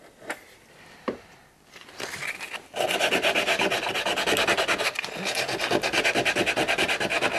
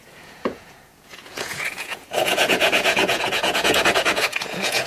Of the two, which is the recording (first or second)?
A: first